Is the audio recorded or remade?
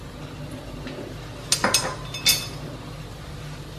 recorded